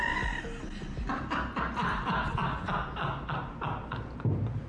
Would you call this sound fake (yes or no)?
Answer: no